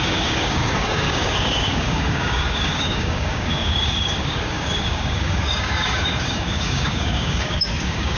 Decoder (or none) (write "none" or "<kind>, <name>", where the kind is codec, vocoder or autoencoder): codec, DAC